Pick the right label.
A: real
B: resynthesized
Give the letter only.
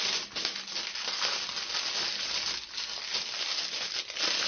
A